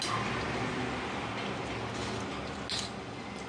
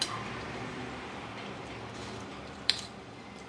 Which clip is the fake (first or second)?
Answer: second